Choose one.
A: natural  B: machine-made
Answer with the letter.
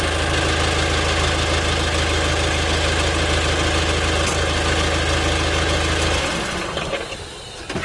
A